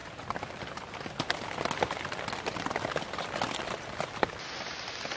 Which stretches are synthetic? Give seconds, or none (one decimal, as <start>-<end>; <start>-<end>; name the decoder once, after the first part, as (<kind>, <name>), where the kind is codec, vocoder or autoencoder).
none